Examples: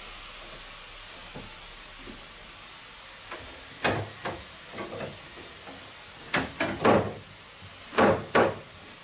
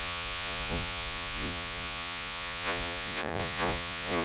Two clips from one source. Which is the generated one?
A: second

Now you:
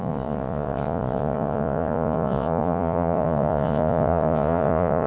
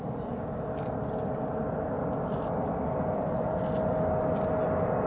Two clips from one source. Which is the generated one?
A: first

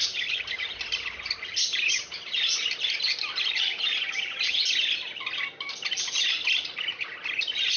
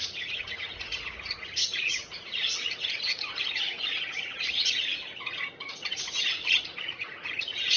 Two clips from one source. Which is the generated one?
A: second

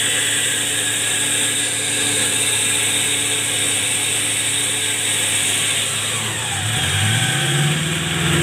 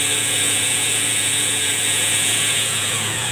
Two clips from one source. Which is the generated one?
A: second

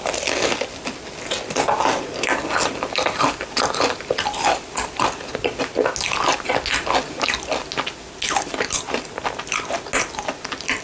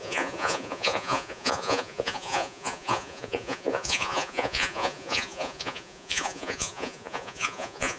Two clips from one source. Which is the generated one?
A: second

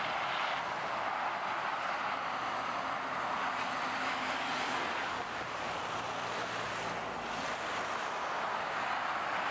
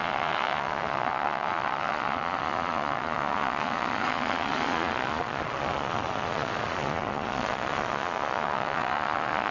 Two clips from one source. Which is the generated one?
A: second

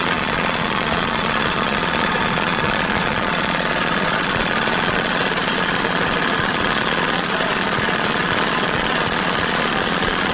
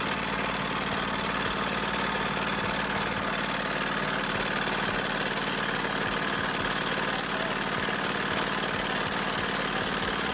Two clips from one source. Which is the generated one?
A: first